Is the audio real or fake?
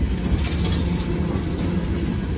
real